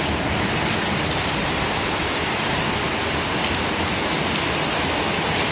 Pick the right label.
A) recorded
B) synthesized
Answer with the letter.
A